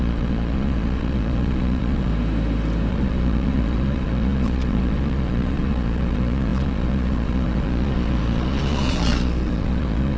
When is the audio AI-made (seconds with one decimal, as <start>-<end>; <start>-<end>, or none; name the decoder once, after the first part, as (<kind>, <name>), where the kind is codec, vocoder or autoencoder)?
0.0-2.1 (vocoder, Vocos); 2.9-10.2